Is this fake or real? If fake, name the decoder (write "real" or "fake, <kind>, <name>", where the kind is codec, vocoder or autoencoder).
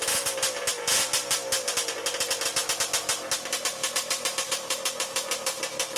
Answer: real